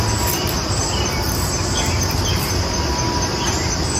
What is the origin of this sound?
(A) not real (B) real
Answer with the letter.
B